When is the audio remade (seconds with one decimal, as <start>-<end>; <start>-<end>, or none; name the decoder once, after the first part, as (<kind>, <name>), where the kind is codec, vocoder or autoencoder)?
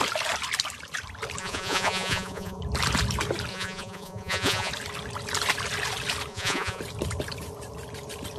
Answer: 1.4-2.6 (vocoder, Vocos); 3.5-4.7; 6.3-6.8